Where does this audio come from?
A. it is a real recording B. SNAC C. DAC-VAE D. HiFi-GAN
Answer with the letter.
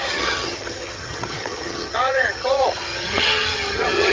D